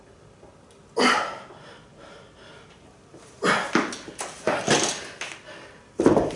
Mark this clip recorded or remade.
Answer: recorded